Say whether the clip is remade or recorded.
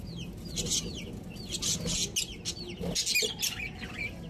recorded